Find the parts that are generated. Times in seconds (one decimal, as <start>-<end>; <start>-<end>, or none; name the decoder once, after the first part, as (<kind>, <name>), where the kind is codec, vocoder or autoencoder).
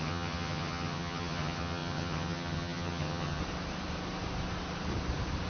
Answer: 0.0-3.4 (vocoder, HiFi-GAN)